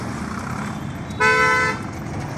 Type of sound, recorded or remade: recorded